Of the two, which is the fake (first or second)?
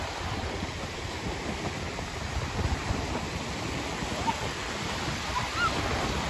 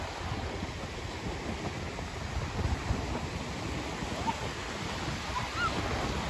first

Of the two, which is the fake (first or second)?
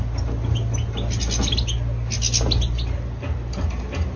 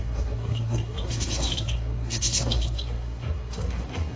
second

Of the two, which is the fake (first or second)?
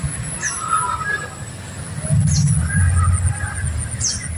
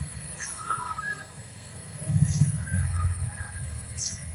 second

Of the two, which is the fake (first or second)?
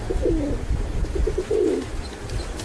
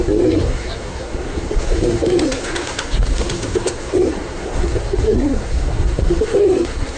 second